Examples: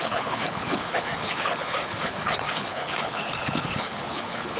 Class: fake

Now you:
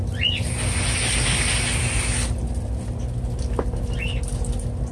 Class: real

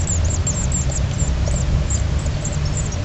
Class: real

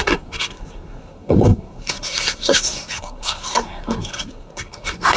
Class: fake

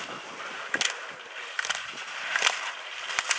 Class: real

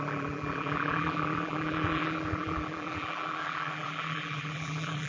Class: fake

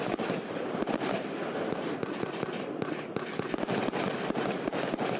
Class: real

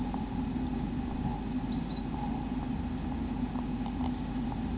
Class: real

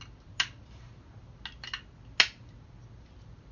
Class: real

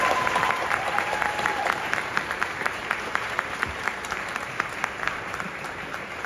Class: fake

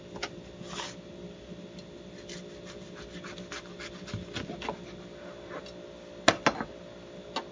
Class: real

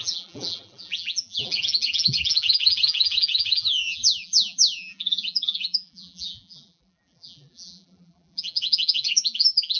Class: fake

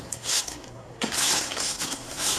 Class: fake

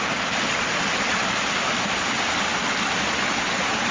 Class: real